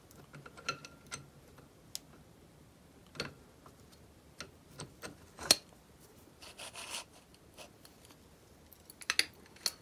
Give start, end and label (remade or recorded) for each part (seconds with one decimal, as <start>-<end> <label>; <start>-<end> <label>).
0.0-9.8 recorded